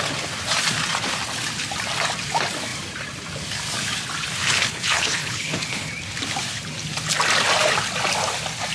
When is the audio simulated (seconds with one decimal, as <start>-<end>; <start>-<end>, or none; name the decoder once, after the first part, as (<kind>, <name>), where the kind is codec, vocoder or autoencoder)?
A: 4.4-5.9 (codec, HILCodec)